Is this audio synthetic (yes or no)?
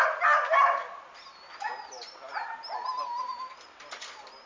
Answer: no